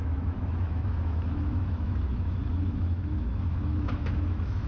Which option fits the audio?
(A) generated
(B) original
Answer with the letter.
A